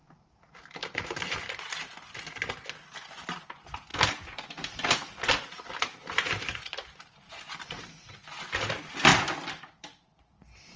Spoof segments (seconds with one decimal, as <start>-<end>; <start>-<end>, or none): 0.8-1.8; 3.9-7.8; 9.1-10.8